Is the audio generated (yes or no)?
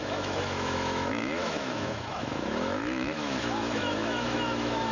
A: yes